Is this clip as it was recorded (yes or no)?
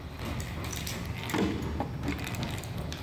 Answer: yes